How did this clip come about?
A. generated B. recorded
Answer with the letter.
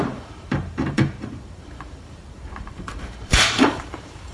A